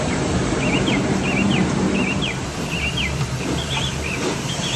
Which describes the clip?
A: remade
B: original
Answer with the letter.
B